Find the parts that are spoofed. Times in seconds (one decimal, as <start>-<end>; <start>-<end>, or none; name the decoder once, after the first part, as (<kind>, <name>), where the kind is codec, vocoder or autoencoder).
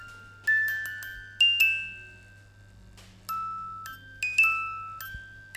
none